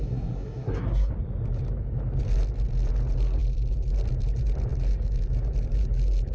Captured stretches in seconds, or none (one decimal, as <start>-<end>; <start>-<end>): 1.1-6.3